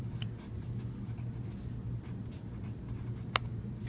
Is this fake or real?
real